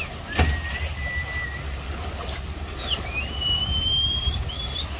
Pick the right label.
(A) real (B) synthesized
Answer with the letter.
A